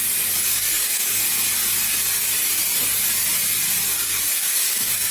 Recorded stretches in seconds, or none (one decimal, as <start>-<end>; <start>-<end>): 0.0-0.5; 1.2-3.9